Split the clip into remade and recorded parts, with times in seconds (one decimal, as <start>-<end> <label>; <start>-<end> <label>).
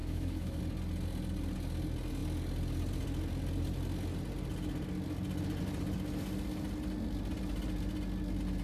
0.0-0.6 remade; 0.6-8.6 recorded